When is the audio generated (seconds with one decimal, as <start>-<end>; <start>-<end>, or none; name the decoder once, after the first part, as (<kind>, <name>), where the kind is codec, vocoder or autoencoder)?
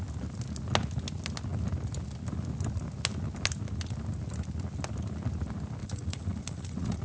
5.8-7.0 (vocoder, Vocos)